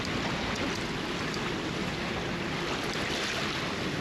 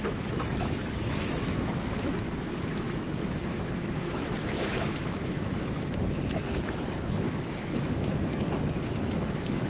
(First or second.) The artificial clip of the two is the second